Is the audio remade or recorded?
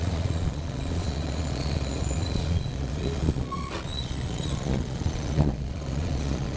remade